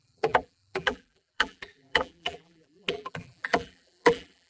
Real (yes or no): no